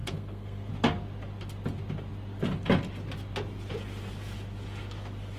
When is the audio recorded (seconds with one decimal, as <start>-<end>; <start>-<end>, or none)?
0.7-5.4